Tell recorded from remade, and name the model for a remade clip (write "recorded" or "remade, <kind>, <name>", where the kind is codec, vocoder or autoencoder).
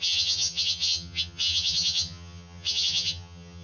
remade, vocoder, HiFi-GAN